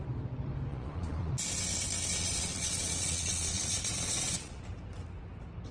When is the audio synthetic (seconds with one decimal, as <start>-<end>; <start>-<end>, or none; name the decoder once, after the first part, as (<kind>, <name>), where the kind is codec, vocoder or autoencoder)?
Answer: 0.7-1.3 (vocoder, Vocos); 2.1-4.6